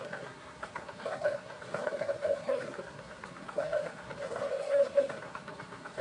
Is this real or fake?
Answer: fake